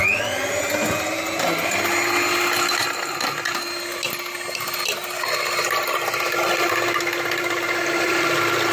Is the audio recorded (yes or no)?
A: yes